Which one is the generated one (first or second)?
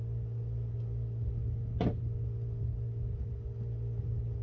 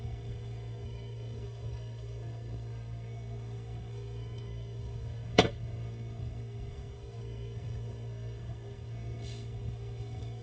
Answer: second